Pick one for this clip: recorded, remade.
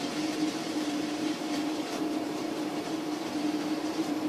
remade